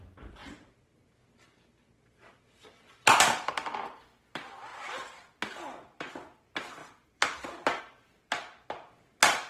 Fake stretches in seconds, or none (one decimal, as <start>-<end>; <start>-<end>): 6.8-7.8

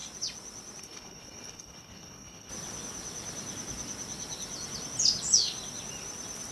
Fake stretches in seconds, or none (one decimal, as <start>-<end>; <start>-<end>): 0.8-2.5

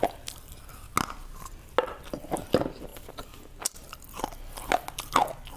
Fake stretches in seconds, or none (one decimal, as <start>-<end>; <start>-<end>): none

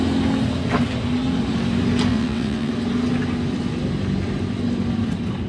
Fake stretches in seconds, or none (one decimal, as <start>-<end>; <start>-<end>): 2.1-2.7

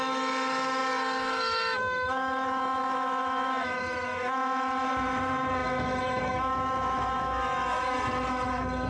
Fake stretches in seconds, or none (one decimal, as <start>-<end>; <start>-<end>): 0.0-8.9

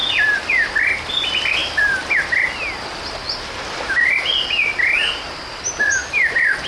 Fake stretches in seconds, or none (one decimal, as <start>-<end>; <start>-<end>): none